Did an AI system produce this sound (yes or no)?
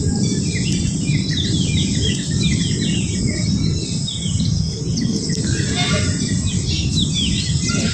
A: no